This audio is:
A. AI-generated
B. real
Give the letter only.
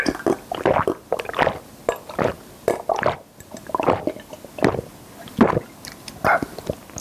B